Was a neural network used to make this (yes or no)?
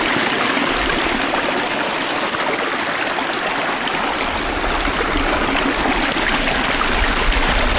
no